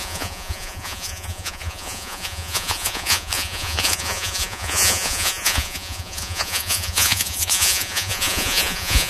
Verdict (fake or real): fake